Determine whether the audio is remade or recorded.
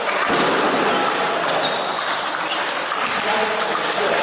remade